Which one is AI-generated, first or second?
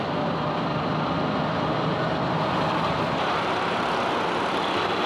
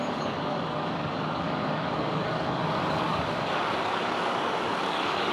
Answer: second